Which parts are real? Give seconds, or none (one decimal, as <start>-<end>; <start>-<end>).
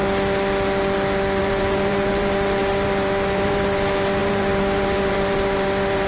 0.0-1.4